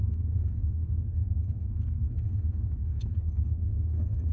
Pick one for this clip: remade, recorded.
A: remade